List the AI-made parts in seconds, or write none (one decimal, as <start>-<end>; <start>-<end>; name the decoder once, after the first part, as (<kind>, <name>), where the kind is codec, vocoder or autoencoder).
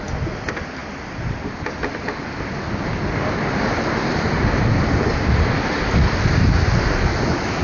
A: 7.1-7.6 (autoencoder, DAC-VAE)